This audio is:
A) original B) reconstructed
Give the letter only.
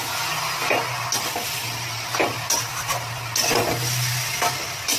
A